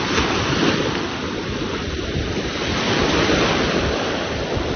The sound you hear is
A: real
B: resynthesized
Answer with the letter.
B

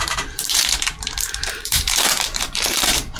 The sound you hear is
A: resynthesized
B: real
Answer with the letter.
A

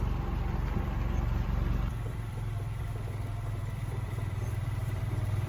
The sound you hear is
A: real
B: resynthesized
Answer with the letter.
B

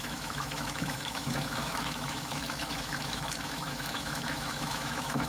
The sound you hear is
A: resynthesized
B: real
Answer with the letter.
A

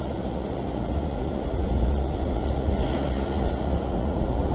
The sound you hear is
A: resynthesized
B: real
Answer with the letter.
A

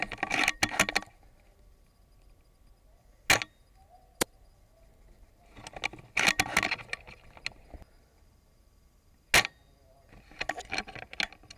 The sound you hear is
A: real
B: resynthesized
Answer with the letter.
A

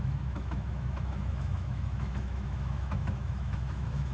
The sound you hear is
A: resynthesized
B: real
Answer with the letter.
A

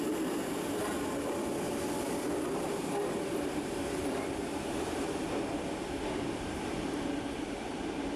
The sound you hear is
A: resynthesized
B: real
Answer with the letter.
A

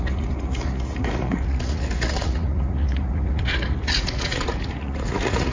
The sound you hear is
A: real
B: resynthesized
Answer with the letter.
B